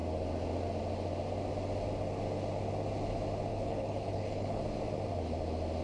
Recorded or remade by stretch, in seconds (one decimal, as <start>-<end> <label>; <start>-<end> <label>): 0.0-3.5 recorded; 3.5-4.6 remade; 4.6-5.8 recorded